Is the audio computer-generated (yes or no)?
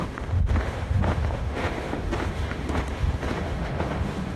yes